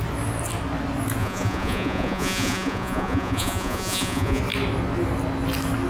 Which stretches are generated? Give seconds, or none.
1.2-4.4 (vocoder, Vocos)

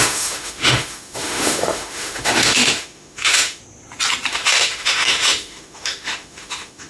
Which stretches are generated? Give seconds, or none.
0.0-3.6 (autoencoder, DAC-VAE); 4.3-6.9

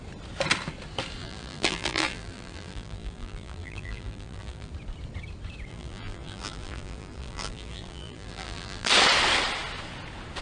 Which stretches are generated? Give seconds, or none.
1.2-4.7 (vocoder, BigVGAN v2); 5.7-8.9

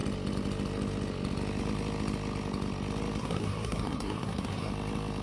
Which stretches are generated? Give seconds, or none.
3.2-4.7 (codec, SNAC)

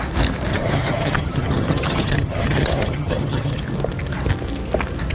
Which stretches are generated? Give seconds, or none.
0.5-3.6 (vocoder, HiFi-GAN)

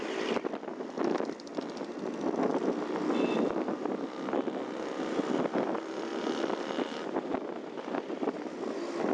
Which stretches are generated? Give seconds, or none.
6.1-6.7 (vocoder, BigVGAN v2)

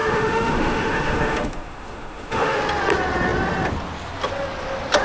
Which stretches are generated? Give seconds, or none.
0.0-2.6 (autoencoder, DAC-VAE)

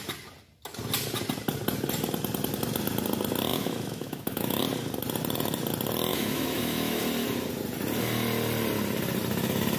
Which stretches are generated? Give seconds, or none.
3.5-4.6 (autoencoder, DAC-VAE); 6.1-7.0